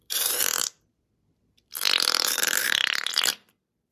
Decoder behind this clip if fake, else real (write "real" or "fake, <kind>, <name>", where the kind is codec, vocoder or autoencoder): fake, vocoder, BigVGAN v2